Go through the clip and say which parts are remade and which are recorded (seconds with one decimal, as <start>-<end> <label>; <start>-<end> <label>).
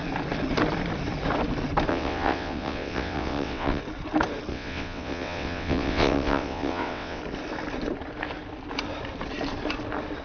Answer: 0.0-1.9 recorded; 1.9-3.8 remade; 3.8-4.5 recorded; 4.5-7.2 remade; 7.2-10.2 recorded